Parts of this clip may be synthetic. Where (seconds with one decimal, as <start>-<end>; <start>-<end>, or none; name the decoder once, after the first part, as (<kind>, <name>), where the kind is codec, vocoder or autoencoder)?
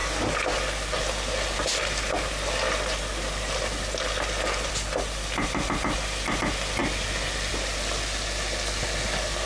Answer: none